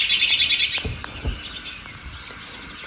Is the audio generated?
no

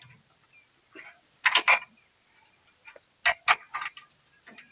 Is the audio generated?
no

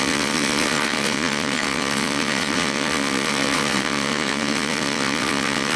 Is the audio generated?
yes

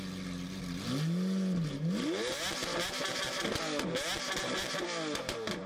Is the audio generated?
no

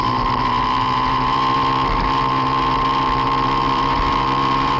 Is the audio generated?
yes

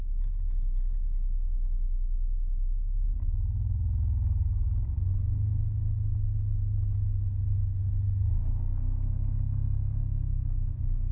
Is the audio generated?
no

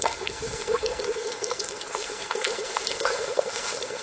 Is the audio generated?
yes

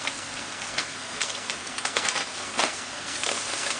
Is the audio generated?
yes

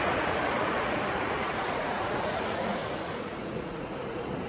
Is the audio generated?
yes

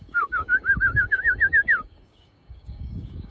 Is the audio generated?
yes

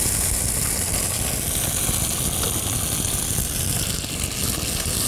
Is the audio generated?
no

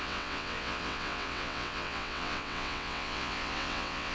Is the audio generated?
yes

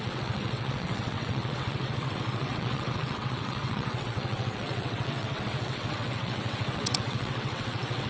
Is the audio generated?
yes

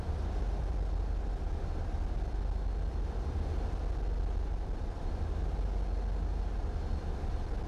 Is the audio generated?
yes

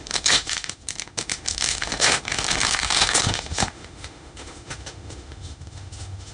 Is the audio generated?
yes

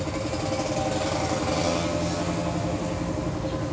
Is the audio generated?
no